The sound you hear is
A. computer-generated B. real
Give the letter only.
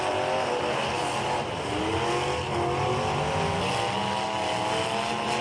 B